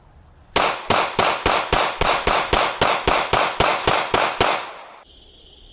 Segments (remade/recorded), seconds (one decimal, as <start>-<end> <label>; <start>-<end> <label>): 0.0-5.7 recorded